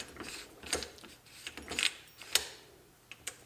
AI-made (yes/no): no